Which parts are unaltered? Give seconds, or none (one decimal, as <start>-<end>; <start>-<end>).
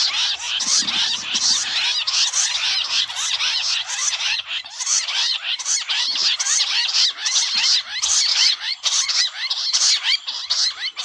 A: 0.0-2.6; 5.5-8.3; 9.2-11.0